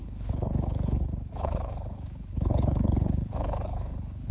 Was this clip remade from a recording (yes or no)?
yes